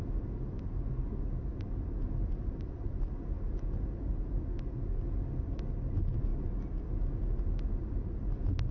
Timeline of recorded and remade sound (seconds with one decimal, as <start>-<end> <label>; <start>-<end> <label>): 0.0-8.7 recorded